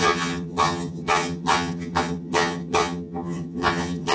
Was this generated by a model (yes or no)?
yes